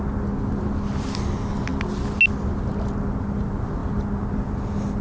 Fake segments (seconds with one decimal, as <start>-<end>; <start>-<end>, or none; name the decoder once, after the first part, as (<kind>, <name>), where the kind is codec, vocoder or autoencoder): none